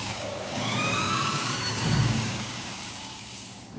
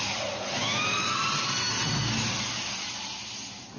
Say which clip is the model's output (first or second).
first